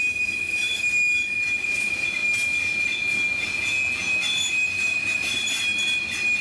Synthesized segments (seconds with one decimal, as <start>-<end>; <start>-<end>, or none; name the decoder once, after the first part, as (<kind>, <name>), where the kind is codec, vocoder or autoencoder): none